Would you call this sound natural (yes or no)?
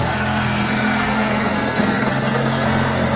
no